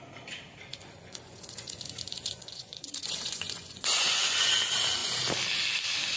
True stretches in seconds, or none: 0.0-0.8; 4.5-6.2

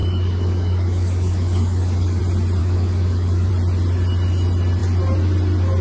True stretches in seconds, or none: 2.2-2.6; 3.5-5.8

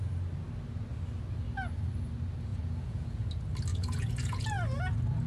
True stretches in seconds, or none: 0.0-2.5; 3.3-3.7; 4.4-5.3

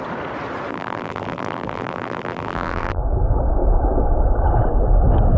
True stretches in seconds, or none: 0.0-0.7; 3.0-5.4

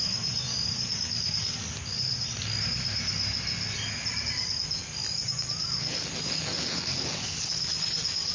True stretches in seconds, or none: 0.0-8.3

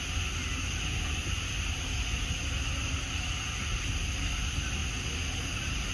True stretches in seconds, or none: 0.0-5.9